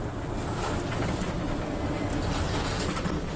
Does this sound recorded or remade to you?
recorded